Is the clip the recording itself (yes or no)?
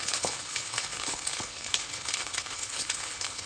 no